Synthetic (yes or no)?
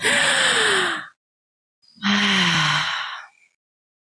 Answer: no